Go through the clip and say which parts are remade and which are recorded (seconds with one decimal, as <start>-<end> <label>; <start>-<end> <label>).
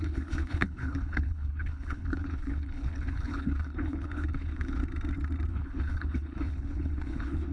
0.0-4.8 remade; 4.8-5.5 recorded; 5.5-7.5 remade